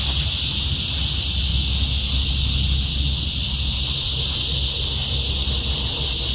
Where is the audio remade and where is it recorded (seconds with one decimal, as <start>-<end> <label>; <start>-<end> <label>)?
0.0-6.3 recorded

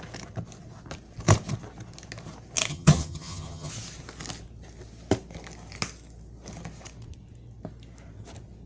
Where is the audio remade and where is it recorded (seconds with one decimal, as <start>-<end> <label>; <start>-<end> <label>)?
0.0-2.7 recorded; 2.7-3.7 remade; 3.7-8.7 recorded

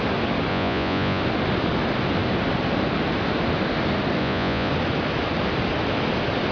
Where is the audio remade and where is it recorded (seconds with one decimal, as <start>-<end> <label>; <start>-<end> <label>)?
0.0-0.5 recorded; 0.5-1.2 remade; 1.2-4.2 recorded; 4.2-4.7 remade; 4.7-6.5 recorded